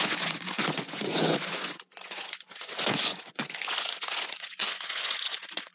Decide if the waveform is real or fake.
fake